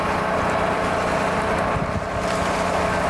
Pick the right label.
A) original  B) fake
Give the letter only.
A